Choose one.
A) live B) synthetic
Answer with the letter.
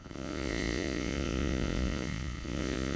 B